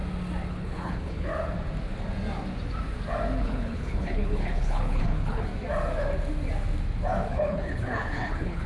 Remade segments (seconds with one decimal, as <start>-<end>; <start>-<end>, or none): 0.5-1.3; 3.4-5.5; 7.3-8.7